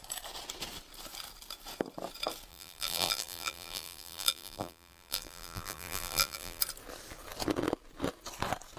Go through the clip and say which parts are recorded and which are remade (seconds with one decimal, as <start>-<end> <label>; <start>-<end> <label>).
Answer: 0.0-2.5 recorded; 2.5-6.6 remade; 6.6-8.8 recorded